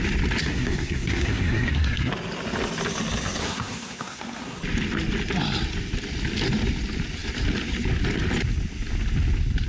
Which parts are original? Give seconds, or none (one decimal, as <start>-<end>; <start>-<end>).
0.0-0.4; 2.1-3.4; 4.6-9.7